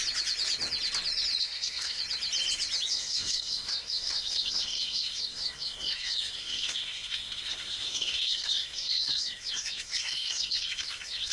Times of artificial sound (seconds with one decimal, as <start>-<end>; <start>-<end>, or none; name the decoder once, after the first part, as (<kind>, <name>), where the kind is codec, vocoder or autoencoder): 1.4-2.0 (codec, SNAC); 2.9-11.3